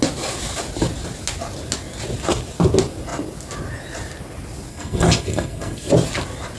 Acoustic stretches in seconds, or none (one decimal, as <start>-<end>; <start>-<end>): 0.0-4.7; 5.9-6.6